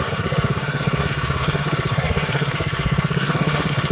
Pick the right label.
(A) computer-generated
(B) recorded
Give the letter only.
A